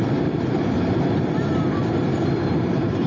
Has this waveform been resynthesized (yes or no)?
yes